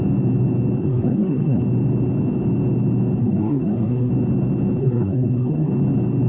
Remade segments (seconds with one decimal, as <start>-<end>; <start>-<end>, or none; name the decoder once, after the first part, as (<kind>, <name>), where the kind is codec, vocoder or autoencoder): 0.8-1.6 (codec, SNAC); 3.2-4.1; 4.8-5.7